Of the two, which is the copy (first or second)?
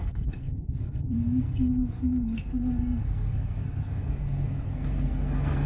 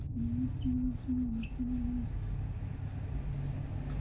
first